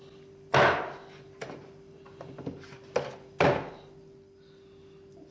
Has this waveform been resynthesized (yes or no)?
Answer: no